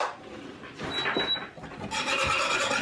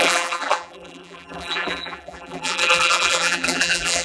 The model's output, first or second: second